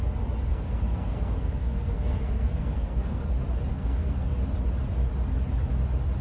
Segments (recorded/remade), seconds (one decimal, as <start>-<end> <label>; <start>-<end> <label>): 0.0-0.5 recorded; 0.5-3.2 remade; 3.2-3.7 recorded; 3.7-4.3 remade; 4.3-6.2 recorded